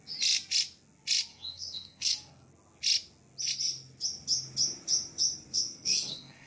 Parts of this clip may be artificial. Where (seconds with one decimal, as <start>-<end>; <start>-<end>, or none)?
1.3-2.5; 5.5-6.5